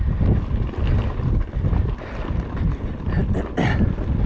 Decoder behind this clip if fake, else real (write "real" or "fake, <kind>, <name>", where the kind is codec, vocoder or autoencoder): real